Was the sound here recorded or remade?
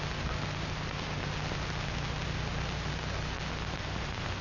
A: recorded